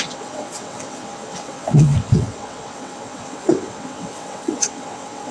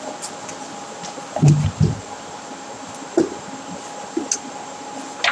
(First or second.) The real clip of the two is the second